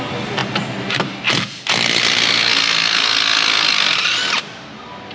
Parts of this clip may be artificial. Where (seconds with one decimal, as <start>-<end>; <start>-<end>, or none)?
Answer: none